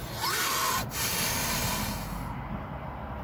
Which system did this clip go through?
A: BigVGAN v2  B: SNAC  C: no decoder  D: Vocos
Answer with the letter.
C